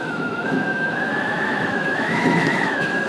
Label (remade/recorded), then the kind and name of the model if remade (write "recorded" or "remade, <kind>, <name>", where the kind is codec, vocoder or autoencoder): remade, autoencoder, DAC-VAE